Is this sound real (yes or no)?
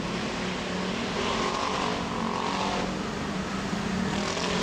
yes